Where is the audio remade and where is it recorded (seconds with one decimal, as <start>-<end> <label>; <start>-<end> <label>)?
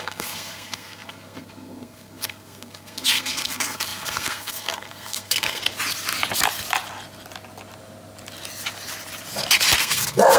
0.0-5.6 remade; 5.6-9.8 recorded; 9.8-10.4 remade